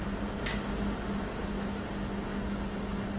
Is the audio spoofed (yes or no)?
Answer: no